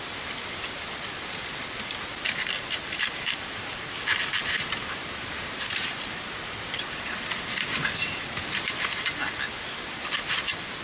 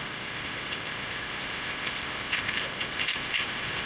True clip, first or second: first